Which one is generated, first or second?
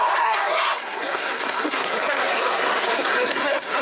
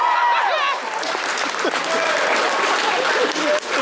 first